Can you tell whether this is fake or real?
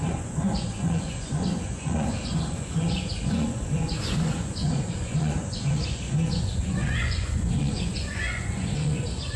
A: fake